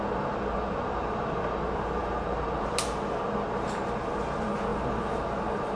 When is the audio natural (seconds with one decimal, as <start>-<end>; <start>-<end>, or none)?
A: 0.0-2.0; 2.7-4.7